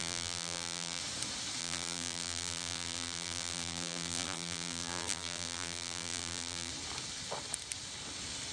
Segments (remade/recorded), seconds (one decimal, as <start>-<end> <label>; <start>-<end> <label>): 0.0-1.0 remade; 1.0-1.6 recorded; 1.6-6.7 remade; 6.7-8.5 recorded